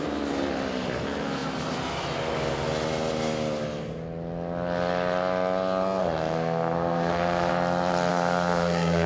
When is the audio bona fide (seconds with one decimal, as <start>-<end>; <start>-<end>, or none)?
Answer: 0.0-6.0; 7.5-8.1